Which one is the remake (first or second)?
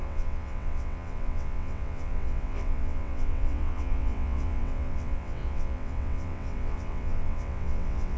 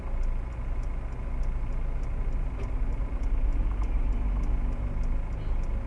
first